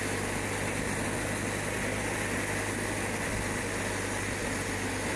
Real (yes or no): yes